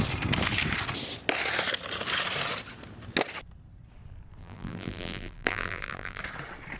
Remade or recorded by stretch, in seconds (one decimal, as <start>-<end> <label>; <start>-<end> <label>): 0.0-4.4 recorded; 4.4-6.2 remade; 6.2-6.8 recorded